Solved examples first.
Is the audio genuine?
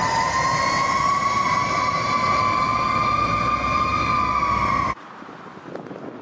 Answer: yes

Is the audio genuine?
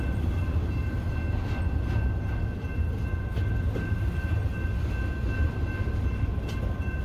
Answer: yes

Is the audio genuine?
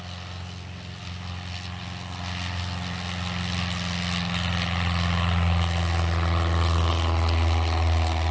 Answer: yes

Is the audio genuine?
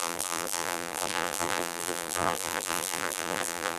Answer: no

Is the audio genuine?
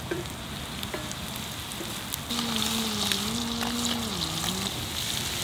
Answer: yes